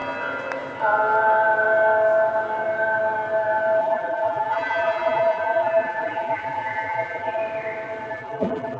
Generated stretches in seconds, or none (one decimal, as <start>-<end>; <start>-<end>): 3.8-7.4; 8.1-8.8